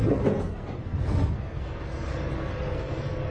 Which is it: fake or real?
fake